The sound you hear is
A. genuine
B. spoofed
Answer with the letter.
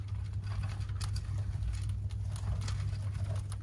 A